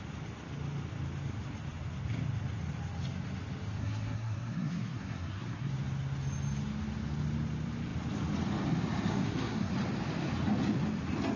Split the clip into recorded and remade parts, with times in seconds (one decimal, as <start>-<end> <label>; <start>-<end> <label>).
0.0-3.8 recorded; 3.8-5.7 remade; 5.7-9.1 recorded; 9.1-9.7 remade; 9.7-11.4 recorded

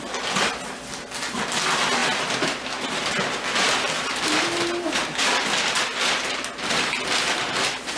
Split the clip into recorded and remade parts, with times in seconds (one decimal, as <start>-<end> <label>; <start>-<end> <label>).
0.0-8.0 recorded

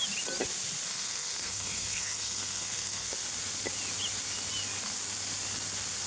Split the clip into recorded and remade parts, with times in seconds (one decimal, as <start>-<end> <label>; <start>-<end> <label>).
0.0-0.9 recorded; 0.9-3.1 remade; 3.1-6.1 recorded

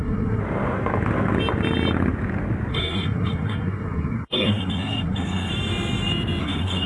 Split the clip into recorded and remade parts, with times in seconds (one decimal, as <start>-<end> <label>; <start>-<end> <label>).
0.0-0.4 remade; 0.4-2.7 recorded; 2.7-5.5 remade; 5.5-6.4 recorded; 6.4-6.9 remade

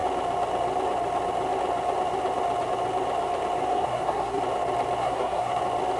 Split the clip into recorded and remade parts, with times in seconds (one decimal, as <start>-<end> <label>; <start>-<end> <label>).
0.0-3.7 recorded; 3.7-4.4 remade; 4.4-5.0 recorded; 5.0-5.6 remade; 5.6-6.0 recorded

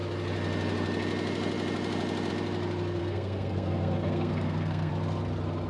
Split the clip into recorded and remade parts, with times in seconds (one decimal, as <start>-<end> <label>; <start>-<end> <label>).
0.0-3.0 recorded; 3.0-4.9 remade; 4.9-5.7 recorded